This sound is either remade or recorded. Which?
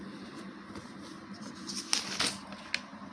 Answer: recorded